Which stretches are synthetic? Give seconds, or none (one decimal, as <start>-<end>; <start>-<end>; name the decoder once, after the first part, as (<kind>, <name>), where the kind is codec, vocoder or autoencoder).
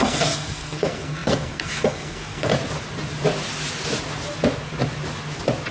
0.0-2.5 (codec, SNAC)